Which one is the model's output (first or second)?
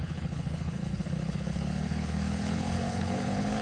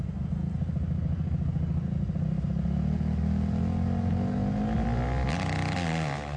first